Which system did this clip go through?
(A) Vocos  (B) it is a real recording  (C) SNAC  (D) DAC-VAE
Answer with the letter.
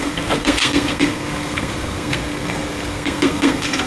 C